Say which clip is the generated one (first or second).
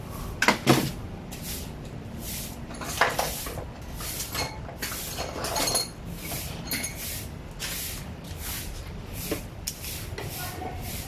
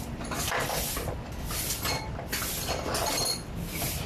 first